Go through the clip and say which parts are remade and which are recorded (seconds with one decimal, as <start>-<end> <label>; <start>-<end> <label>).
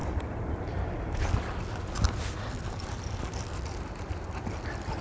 0.0-5.0 recorded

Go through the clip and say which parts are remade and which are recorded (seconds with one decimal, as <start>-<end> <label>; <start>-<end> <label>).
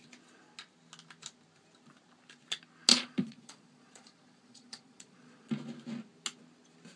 0.0-2.9 recorded; 2.9-5.5 remade; 5.5-7.0 recorded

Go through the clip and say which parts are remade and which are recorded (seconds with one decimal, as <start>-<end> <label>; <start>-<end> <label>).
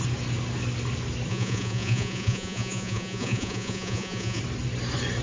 0.0-1.3 recorded; 1.3-4.4 remade; 4.4-5.2 recorded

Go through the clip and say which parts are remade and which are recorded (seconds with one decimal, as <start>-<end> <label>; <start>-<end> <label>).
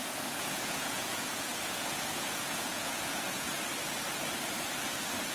0.0-3.6 remade; 3.6-5.3 recorded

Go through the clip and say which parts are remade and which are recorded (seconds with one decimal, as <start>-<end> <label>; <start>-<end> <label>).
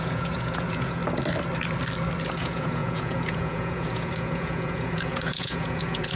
0.0-1.0 remade; 1.0-2.2 recorded; 2.2-6.2 remade